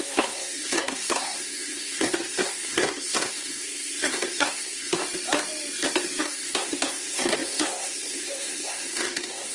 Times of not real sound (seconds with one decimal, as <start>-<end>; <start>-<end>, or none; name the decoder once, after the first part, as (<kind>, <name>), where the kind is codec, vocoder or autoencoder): 0.0-5.0 (codec, SNAC); 6.2-9.5

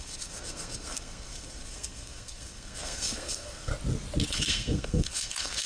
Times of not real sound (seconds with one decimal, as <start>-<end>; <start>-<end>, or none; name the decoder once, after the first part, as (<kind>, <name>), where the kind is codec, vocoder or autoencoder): 0.0-3.7 (codec, SNAC); 4.3-5.7

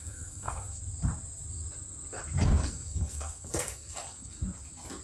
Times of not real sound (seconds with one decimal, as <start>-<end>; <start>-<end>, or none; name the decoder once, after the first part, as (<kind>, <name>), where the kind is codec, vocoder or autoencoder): 0.0-0.8 (codec, SNAC); 2.6-4.4

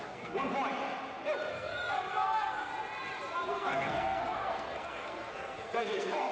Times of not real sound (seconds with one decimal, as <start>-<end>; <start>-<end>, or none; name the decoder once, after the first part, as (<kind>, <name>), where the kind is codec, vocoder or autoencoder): 0.0-0.5 (codec, SNAC); 1.5-2.7; 3.5-6.3

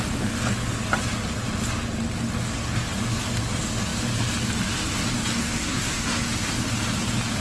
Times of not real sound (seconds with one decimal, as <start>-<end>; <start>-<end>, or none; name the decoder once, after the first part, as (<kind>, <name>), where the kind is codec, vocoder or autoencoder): 5.4-6.3 (codec, SNAC)

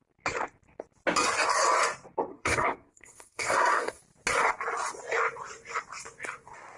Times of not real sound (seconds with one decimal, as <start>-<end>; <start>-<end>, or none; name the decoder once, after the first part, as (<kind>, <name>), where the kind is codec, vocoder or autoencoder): 2.3-4.0 (codec, SNAC)